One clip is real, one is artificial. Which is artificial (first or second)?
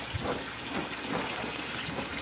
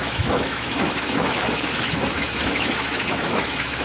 second